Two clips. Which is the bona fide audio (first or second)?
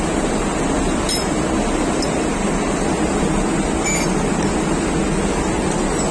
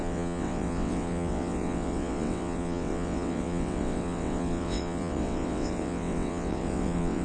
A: first